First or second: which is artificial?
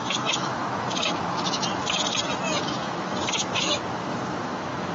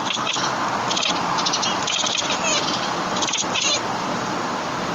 first